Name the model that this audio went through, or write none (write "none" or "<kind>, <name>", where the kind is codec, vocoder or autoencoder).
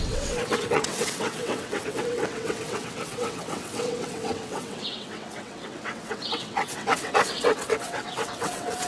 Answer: vocoder, WaveNeXt